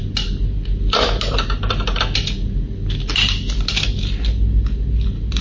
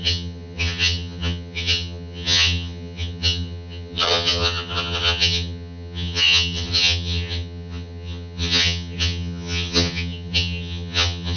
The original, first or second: first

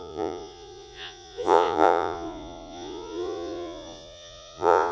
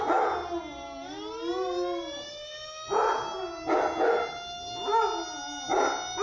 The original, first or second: second